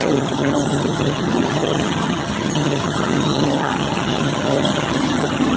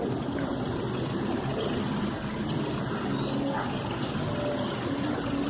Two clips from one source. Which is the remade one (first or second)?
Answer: first